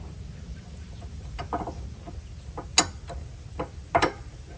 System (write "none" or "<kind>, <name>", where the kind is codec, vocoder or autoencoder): none